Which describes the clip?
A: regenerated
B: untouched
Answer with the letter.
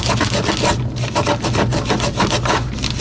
B